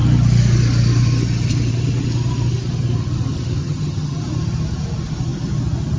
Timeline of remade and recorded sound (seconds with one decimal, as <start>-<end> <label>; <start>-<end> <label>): 0.0-3.6 recorded; 3.6-4.2 remade; 4.2-6.0 recorded